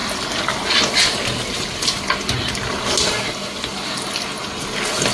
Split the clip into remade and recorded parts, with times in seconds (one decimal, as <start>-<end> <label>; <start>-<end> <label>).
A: 0.0-5.1 recorded

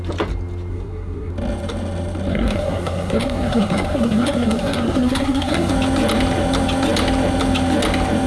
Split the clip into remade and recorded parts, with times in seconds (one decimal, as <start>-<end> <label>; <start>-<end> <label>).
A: 0.0-0.7 recorded; 0.7-1.3 remade; 1.3-2.3 recorded; 2.3-5.7 remade; 5.7-8.3 recorded

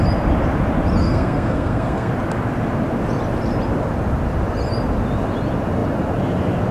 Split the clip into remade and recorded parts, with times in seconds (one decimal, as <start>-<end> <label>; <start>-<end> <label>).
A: 0.0-1.0 recorded; 1.0-2.1 remade; 2.1-6.7 recorded